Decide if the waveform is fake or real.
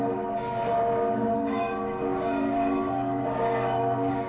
fake